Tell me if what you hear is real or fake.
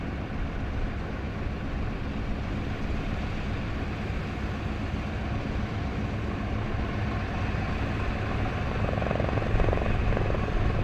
real